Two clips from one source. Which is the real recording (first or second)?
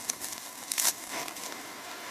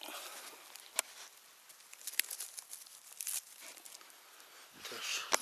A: second